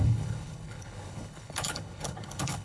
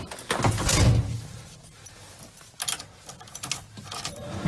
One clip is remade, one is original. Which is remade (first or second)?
first